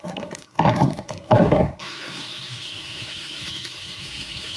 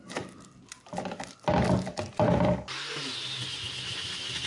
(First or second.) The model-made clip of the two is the first